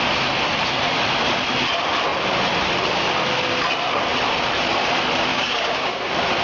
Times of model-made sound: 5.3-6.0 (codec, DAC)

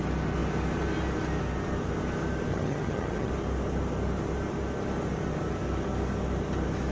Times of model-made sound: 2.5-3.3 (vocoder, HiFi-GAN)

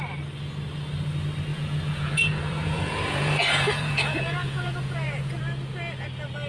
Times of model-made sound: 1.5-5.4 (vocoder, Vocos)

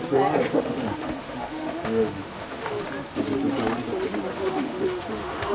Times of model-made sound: 0.5-2.8 (autoencoder, DAC-VAE); 4.3-5.5